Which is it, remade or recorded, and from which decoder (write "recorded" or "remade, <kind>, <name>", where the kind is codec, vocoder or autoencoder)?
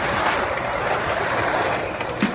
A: remade, vocoder, BigVGAN v2